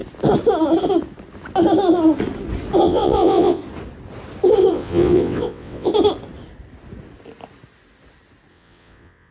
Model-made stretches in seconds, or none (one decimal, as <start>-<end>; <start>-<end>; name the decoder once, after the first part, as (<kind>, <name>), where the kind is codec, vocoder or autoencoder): 2.8-3.6 (vocoder, WaveNeXt); 4.7-5.9; 8.5-9.3